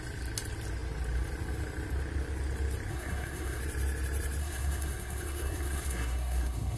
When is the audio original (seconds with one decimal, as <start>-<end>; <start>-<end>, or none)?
0.0-2.9; 3.6-4.4